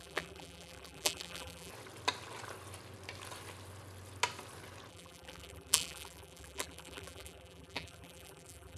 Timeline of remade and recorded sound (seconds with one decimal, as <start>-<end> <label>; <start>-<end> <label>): 0.0-1.7 remade; 1.7-4.9 recorded; 4.9-8.8 remade